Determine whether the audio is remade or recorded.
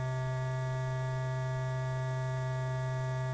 recorded